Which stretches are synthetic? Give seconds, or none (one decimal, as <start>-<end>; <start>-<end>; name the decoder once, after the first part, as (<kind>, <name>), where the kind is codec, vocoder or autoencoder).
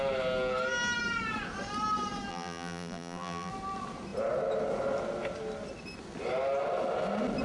2.3-3.5 (vocoder, BigVGAN v2)